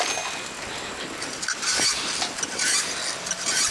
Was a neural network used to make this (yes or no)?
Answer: no